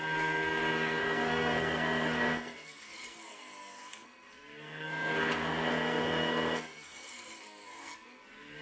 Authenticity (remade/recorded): remade